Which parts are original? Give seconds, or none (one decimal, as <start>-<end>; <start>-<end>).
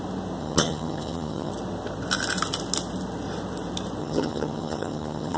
0.0-0.4; 1.5-4.0